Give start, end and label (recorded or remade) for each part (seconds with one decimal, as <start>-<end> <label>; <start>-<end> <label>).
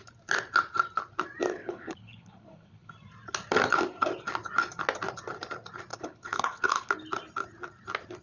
0.0-1.5 recorded; 1.5-2.9 remade; 2.9-5.9 recorded; 5.9-6.9 remade; 6.9-8.2 recorded